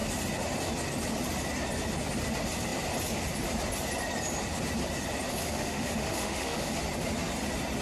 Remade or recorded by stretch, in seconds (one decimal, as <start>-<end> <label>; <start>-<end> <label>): 0.0-5.4 recorded; 5.4-6.7 remade; 6.7-7.8 recorded